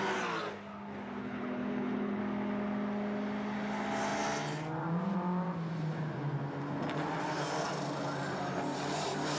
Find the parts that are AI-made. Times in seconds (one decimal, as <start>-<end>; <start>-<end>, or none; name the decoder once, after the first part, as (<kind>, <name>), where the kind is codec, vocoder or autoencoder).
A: 1.2-2.2 (codec, HILCodec)